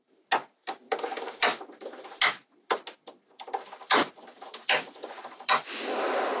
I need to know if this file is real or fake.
real